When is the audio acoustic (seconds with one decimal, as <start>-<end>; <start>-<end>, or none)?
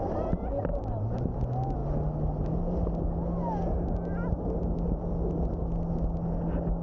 0.0-0.7; 1.4-6.8